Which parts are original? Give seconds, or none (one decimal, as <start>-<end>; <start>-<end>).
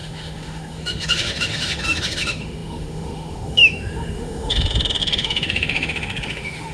none